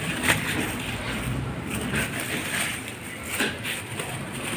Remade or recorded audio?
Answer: remade